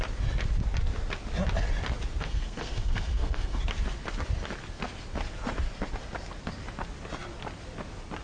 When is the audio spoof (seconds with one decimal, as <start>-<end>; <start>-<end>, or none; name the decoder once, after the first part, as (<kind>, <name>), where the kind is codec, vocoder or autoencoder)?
2.2-3.6 (codec, SNAC)